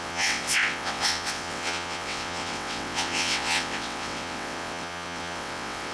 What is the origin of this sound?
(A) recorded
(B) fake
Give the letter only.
B